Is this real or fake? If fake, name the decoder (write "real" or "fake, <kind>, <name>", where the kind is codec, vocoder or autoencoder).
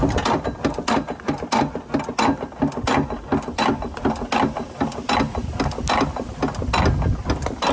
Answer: real